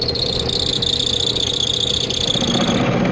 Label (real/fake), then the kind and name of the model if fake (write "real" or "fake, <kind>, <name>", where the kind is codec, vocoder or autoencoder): real